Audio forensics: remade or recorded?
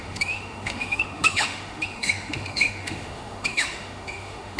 remade